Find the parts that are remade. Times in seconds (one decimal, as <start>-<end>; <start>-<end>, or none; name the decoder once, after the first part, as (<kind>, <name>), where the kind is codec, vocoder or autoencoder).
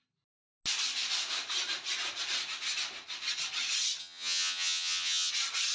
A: 4.0-5.3 (vocoder, HiFi-GAN)